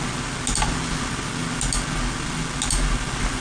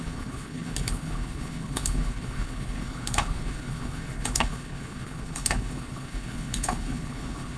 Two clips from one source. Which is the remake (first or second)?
second